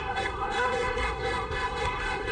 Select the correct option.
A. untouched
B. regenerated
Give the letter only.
B